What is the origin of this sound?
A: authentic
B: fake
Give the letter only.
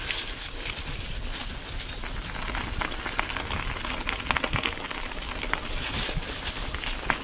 A